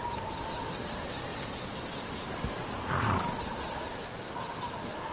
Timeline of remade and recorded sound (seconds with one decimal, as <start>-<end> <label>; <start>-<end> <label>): 0.0-5.1 recorded